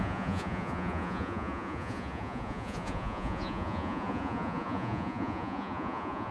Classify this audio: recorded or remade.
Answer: remade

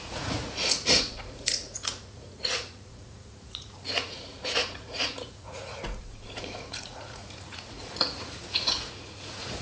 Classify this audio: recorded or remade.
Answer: remade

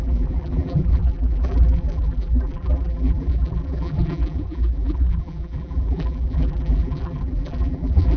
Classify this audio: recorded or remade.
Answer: remade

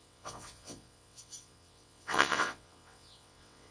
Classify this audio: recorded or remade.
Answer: remade